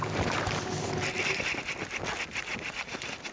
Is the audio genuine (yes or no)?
yes